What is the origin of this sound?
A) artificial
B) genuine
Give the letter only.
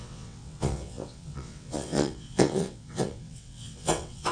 A